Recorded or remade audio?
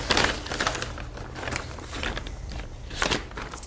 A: recorded